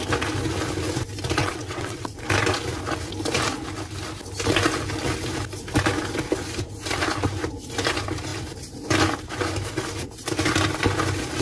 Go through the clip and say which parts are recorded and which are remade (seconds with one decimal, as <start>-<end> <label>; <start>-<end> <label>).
0.0-1.4 recorded; 1.4-2.1 remade; 2.1-11.4 recorded